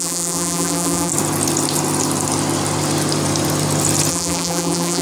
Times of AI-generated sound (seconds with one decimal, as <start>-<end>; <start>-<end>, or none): 0.0-1.1; 4.1-5.0